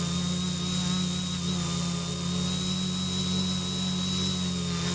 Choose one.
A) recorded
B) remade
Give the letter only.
A